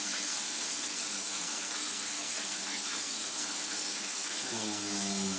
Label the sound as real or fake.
fake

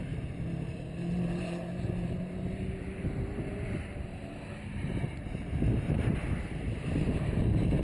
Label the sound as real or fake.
fake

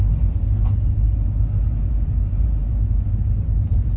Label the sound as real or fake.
real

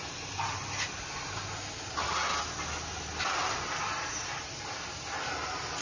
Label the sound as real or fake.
real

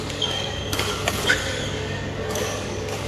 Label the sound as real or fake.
fake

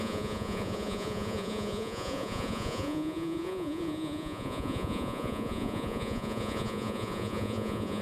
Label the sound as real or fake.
fake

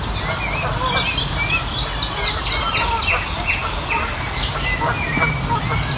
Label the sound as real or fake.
real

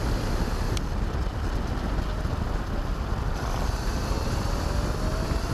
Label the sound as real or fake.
real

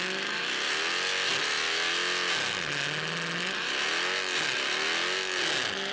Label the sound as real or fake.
real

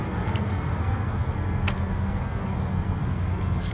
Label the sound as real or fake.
fake